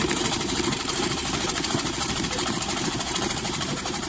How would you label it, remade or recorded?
remade